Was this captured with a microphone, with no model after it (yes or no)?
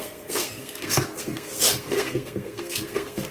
no